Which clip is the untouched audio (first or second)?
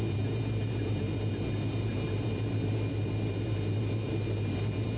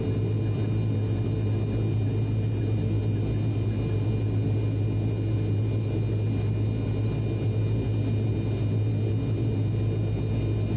second